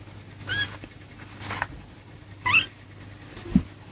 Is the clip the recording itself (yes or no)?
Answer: no